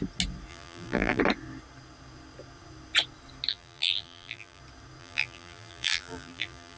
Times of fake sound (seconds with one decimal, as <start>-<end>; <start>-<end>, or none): 0.5-1.2; 3.5-4.6; 5.0-6.8